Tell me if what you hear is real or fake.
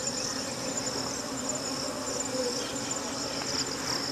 real